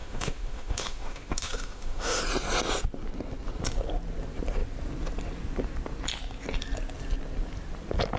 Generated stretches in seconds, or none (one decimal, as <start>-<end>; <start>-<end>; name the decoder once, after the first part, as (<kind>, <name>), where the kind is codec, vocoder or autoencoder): 0.0-2.2 (autoencoder, DAC-VAE)